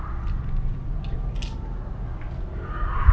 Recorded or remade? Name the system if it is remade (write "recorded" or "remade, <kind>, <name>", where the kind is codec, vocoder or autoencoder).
recorded